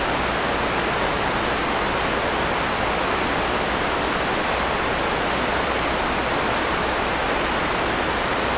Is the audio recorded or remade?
recorded